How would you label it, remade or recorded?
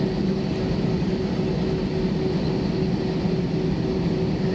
recorded